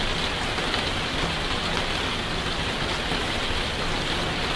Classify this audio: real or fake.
real